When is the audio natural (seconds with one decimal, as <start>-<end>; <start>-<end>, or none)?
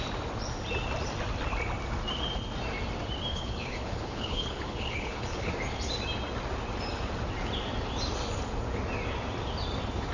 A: 0.0-3.3; 5.5-10.1